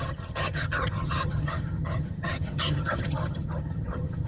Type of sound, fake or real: fake